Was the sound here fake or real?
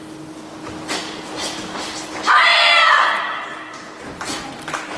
real